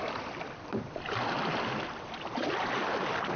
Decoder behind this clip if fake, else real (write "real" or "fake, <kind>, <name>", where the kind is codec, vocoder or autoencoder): real